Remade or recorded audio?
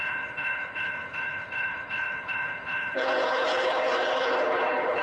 remade